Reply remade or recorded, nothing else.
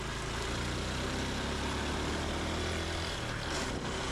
recorded